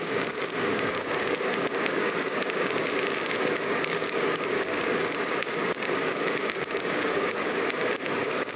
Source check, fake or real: fake